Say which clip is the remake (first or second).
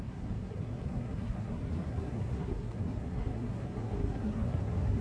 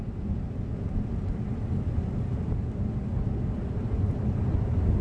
first